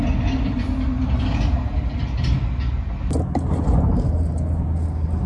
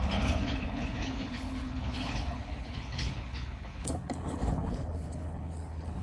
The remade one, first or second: second